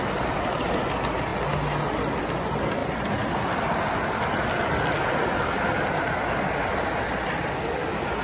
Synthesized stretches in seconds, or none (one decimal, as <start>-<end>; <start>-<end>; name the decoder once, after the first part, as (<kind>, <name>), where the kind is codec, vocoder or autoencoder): none